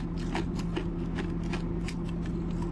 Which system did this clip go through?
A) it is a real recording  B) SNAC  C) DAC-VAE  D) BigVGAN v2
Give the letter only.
A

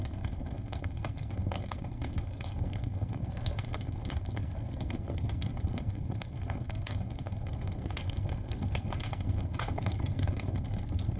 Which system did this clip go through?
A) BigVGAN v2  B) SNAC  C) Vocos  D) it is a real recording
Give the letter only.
B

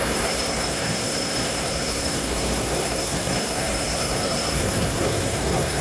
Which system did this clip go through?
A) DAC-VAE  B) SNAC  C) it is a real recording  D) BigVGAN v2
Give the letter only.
B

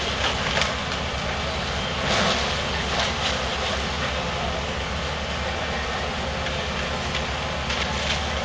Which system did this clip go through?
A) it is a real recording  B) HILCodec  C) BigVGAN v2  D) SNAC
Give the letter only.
A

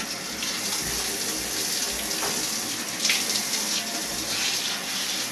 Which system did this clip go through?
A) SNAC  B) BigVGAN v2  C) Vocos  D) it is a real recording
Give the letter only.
D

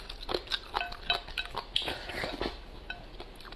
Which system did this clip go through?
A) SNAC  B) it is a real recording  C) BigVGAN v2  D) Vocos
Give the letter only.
B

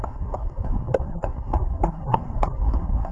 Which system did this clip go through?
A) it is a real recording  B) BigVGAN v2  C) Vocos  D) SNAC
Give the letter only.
D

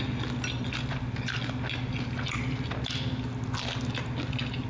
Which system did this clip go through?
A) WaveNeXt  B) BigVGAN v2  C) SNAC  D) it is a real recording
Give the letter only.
D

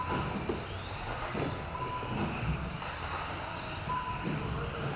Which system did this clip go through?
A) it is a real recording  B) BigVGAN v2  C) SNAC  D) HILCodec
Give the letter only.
A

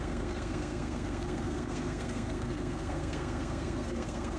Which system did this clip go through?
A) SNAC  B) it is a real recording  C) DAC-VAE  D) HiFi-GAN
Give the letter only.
A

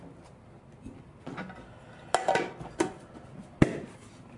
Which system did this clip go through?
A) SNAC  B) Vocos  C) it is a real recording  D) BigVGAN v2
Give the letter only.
C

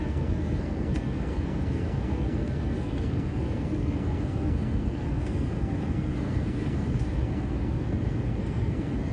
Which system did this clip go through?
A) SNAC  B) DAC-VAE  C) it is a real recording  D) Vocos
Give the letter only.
A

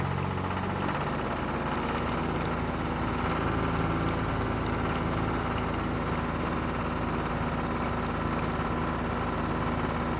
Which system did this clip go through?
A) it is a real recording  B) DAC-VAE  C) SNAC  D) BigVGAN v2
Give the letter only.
A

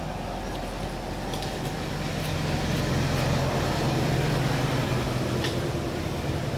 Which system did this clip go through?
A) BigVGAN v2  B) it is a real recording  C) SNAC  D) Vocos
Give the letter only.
B